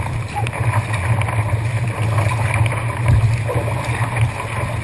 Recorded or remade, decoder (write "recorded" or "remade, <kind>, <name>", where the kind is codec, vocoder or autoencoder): recorded